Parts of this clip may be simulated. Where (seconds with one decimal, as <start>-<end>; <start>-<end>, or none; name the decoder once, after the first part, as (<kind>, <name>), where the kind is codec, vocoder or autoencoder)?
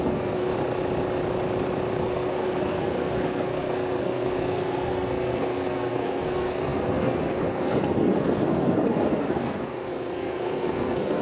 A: 0.0-0.5 (codec, SNAC); 2.0-11.2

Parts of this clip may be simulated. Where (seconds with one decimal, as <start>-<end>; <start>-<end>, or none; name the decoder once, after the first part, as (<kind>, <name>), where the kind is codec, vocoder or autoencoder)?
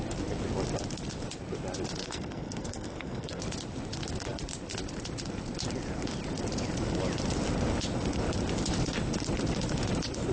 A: 2.0-3.4 (codec, SNAC)